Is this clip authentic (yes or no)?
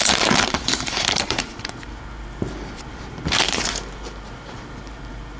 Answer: no